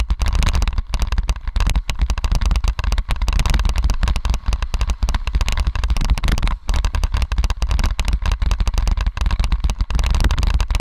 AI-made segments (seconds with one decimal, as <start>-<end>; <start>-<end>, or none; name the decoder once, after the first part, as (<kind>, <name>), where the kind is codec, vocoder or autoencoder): 5.5-7.3 (vocoder, BigVGAN v2)